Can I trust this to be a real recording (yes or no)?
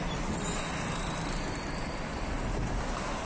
yes